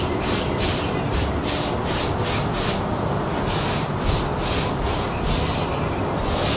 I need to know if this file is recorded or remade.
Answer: recorded